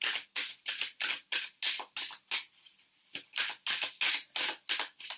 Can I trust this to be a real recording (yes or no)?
yes